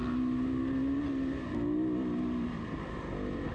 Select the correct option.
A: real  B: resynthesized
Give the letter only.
A